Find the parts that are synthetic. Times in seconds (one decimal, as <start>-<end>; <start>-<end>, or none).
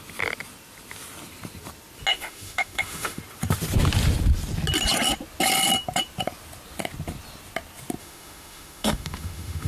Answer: 2.1-3.2; 8.0-9.7